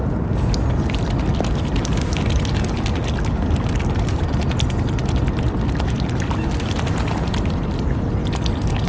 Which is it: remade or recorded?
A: recorded